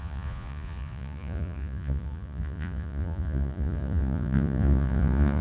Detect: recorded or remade remade